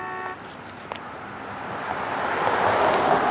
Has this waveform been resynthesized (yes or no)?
no